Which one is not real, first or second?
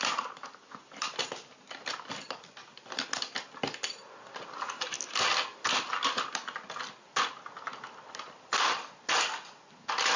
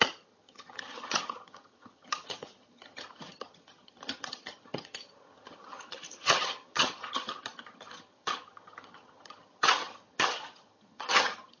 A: second